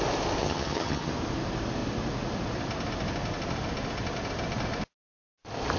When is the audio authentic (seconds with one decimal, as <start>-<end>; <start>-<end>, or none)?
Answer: 0.0-0.4; 1.1-5.8